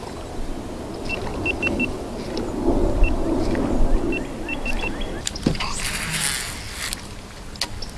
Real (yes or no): yes